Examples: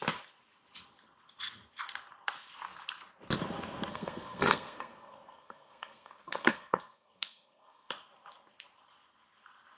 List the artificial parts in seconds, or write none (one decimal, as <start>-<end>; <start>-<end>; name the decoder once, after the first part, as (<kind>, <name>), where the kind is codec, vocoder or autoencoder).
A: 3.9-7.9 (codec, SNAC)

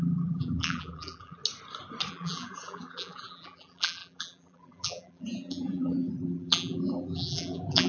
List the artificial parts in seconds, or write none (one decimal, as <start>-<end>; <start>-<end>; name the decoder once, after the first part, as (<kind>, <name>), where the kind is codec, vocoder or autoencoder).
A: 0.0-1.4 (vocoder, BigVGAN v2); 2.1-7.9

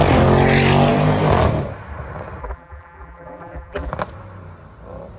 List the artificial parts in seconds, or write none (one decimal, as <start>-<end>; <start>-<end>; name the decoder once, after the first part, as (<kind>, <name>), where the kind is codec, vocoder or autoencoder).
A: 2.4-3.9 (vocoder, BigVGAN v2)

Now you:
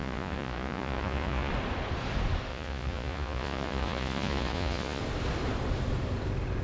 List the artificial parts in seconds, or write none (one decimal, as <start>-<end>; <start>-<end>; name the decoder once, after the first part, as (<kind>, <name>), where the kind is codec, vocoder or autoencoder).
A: 0.0-1.5 (vocoder, Vocos); 2.5-5.0

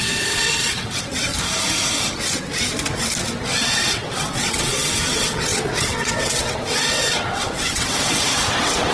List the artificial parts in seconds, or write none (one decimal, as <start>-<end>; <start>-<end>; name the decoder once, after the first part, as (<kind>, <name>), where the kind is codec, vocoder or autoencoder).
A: 0.0-1.3 (vocoder, WaveNeXt); 3.6-8.9

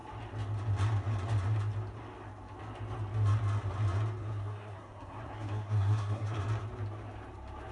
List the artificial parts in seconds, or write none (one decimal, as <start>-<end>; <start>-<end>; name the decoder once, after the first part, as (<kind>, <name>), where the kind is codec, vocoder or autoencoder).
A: 4.2-6.4 (codec, SNAC)